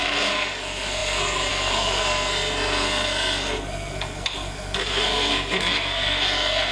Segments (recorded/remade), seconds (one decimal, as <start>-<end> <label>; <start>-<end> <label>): 0.0-6.7 remade